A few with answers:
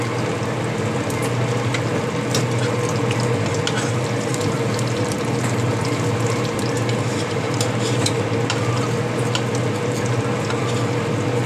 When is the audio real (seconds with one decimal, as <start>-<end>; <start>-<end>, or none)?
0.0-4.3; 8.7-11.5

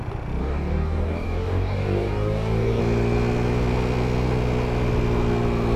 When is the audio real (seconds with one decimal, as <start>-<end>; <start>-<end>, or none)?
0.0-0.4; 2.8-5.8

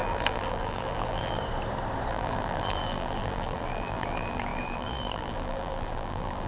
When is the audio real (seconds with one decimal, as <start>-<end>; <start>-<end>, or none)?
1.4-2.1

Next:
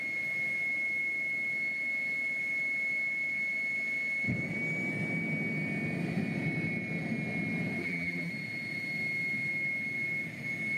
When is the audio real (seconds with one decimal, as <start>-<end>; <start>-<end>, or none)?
0.0-7.8; 8.3-10.8

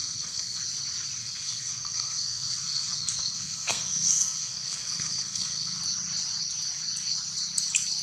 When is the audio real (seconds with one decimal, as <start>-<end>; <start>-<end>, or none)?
0.6-1.2; 5.8-8.0